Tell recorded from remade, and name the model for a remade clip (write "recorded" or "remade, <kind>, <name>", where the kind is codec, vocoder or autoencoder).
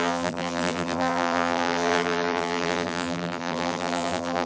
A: remade, vocoder, BigVGAN v2